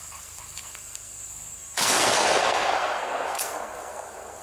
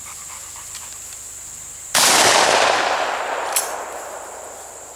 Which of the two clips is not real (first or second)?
first